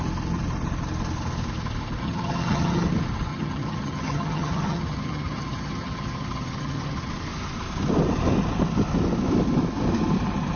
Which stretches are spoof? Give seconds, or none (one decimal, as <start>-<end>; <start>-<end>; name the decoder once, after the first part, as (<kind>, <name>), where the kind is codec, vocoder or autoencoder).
2.0-2.9 (vocoder, HiFi-GAN); 3.3-7.1